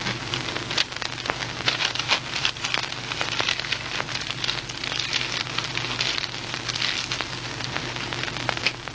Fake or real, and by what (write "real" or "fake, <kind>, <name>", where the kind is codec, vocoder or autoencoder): real